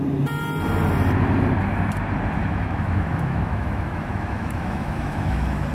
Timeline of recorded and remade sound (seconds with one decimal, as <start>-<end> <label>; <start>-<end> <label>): 0.0-2.4 recorded; 2.4-5.7 remade